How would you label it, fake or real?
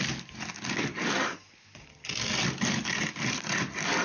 real